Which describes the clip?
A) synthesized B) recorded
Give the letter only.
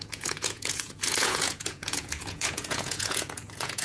A